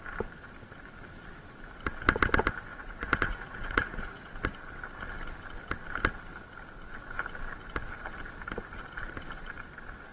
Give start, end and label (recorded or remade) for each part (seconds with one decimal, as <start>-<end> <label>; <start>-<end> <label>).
0.0-2.7 recorded; 2.7-4.3 remade; 4.3-10.1 recorded